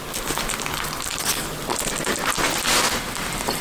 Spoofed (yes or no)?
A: no